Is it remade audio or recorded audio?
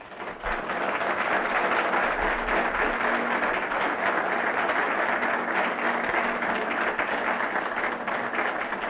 recorded